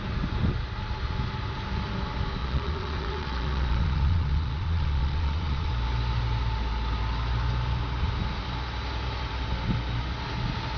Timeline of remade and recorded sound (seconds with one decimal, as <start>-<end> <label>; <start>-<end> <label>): 0.0-2.4 recorded; 2.4-5.7 remade; 5.7-10.8 recorded